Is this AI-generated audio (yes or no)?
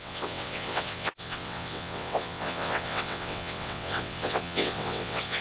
yes